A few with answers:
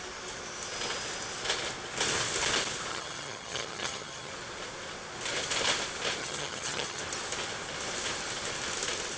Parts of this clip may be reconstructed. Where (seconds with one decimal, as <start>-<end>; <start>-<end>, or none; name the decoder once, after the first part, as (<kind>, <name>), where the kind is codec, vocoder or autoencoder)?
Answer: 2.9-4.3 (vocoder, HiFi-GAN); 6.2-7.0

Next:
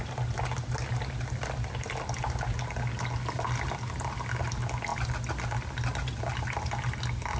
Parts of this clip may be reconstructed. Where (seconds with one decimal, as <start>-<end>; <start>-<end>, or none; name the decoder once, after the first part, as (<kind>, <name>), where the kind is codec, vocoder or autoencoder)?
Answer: none

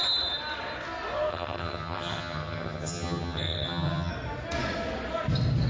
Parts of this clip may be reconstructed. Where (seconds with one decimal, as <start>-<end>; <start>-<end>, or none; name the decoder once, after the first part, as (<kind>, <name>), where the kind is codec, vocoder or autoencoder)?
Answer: 1.3-4.1 (vocoder, HiFi-GAN)